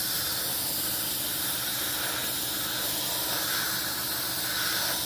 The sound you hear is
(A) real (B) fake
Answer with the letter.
A